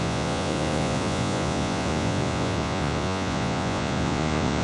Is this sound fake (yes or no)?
yes